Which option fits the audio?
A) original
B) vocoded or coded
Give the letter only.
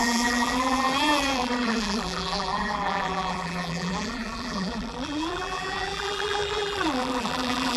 B